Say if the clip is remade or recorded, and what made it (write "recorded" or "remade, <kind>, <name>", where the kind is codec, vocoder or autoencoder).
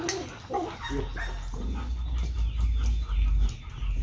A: recorded